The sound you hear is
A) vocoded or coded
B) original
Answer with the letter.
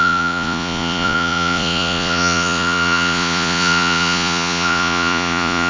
A